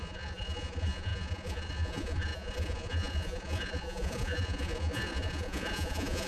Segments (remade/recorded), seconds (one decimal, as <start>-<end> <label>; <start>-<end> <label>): 0.0-6.3 remade